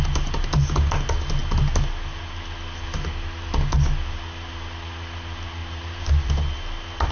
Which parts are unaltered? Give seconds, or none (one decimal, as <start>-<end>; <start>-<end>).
0.0-5.6; 6.3-7.1